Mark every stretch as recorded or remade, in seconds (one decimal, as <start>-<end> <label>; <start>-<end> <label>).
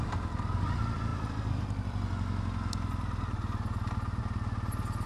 0.0-5.1 recorded